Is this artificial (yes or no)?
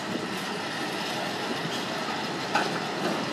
no